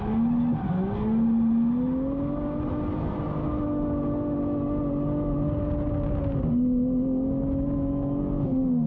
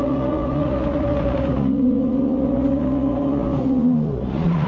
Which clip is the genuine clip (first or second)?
first